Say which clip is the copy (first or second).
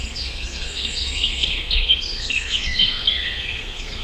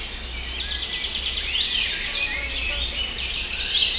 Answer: first